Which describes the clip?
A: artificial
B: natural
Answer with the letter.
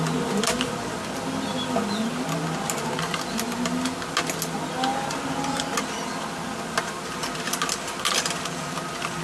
B